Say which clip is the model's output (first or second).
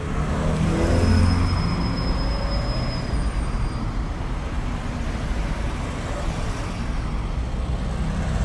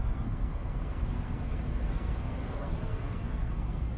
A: second